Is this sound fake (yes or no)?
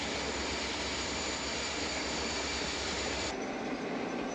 no